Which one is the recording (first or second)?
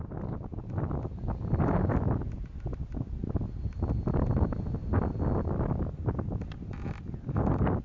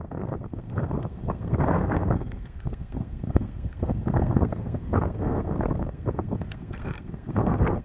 first